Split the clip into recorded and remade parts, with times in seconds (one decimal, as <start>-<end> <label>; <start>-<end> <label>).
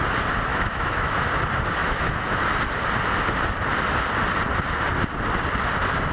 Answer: 0.0-0.5 recorded; 0.5-1.2 remade; 1.2-1.8 recorded; 1.8-2.4 remade; 2.4-6.1 recorded